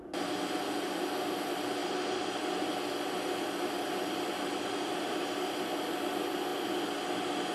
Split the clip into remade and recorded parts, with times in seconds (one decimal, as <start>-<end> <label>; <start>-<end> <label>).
0.0-7.5 recorded